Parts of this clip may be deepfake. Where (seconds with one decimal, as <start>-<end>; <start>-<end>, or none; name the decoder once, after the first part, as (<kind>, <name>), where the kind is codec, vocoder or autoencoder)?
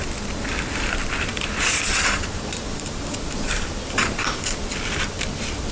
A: 1.3-4.6 (vocoder, BigVGAN v2)